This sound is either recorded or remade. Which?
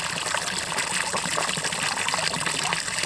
recorded